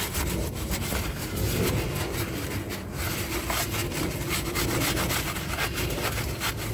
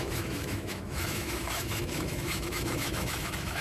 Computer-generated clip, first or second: second